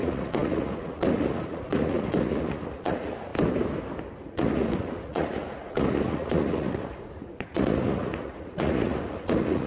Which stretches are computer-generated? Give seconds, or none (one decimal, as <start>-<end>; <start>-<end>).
0.0-3.3; 4.2-9.7